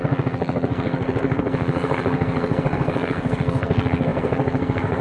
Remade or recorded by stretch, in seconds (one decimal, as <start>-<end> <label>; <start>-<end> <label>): 0.0-5.0 remade